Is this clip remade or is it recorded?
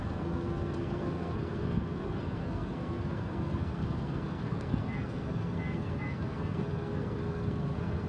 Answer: remade